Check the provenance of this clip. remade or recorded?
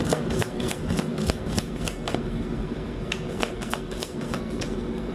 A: remade